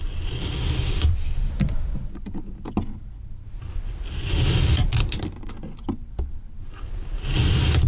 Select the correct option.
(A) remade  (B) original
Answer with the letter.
B